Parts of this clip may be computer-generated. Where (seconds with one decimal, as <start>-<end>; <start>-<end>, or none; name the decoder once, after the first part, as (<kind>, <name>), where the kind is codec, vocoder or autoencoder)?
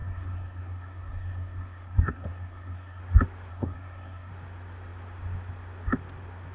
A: 0.0-3.0 (codec, SNAC); 3.5-4.3